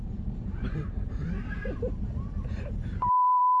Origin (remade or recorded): remade